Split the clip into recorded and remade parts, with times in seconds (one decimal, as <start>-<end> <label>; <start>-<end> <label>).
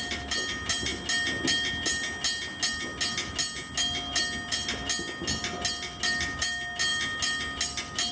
0.0-8.1 recorded